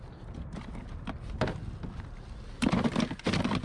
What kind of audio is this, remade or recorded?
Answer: recorded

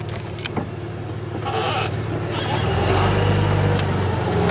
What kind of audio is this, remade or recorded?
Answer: recorded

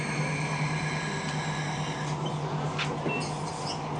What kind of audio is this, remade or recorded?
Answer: recorded